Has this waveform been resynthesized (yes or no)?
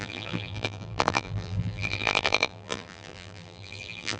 yes